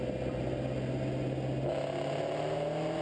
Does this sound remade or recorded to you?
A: recorded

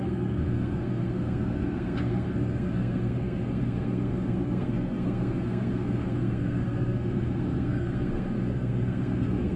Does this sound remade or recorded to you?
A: remade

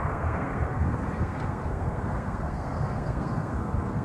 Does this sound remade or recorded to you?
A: remade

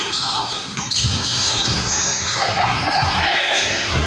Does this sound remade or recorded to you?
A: remade